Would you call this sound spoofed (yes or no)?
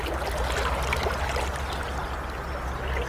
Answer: no